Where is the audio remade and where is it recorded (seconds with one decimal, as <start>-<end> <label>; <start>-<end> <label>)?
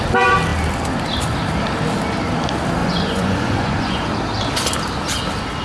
0.0-2.8 recorded; 2.8-4.1 remade; 4.1-5.6 recorded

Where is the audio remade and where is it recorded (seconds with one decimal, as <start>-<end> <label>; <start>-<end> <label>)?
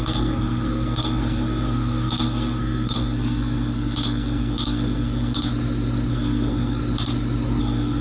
0.0-5.5 remade; 5.5-6.1 recorded; 6.1-6.8 remade; 6.8-7.6 recorded; 7.6-8.0 remade